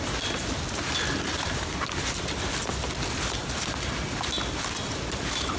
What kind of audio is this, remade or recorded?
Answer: recorded